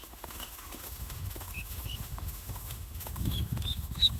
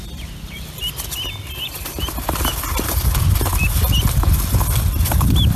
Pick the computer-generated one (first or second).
first